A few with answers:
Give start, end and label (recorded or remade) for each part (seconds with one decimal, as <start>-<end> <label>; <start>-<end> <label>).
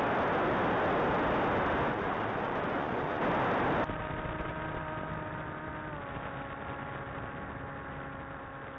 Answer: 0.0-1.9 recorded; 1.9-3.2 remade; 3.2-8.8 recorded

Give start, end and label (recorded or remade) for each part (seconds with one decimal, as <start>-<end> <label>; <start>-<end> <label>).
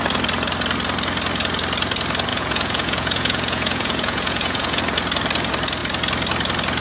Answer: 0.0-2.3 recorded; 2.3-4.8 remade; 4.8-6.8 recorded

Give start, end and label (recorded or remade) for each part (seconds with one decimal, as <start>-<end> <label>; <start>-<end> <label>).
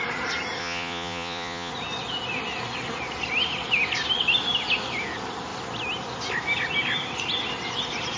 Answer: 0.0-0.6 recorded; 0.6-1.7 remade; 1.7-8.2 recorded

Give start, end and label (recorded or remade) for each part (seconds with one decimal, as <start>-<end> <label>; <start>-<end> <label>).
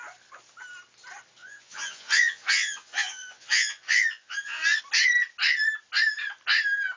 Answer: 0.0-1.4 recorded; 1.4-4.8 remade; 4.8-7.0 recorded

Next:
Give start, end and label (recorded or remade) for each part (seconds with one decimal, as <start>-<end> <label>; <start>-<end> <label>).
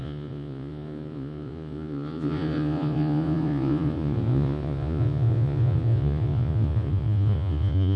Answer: 0.0-8.0 remade